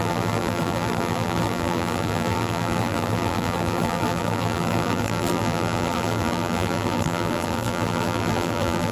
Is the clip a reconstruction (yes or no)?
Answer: yes